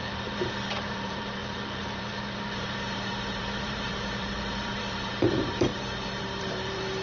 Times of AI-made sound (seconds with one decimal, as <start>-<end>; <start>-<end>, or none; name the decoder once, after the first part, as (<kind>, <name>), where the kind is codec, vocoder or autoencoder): 0.0-7.0 (vocoder, BigVGAN v2)